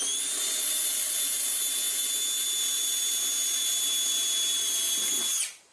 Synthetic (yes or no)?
no